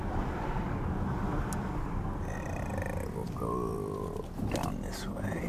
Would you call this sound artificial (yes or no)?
no